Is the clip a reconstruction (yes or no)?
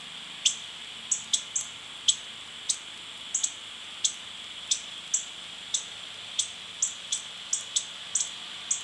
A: no